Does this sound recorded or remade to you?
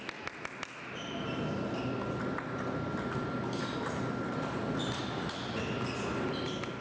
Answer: recorded